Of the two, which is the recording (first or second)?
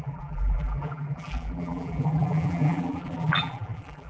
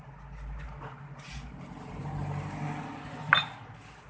second